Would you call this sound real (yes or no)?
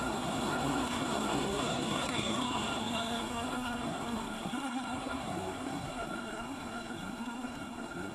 no